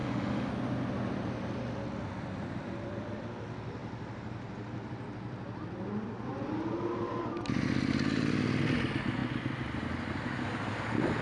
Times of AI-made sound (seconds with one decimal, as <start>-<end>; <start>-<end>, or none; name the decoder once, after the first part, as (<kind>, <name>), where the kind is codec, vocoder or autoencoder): 0.0-0.5 (autoencoder, DAC-VAE)